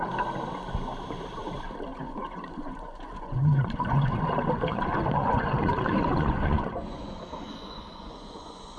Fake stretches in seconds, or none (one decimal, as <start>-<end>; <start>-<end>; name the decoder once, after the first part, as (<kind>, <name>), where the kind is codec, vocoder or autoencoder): 1.9-4.2 (vocoder, Vocos); 4.7-8.8